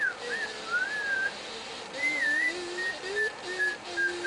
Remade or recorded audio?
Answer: recorded